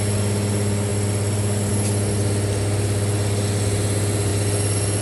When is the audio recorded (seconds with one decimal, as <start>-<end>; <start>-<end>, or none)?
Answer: 0.0-5.0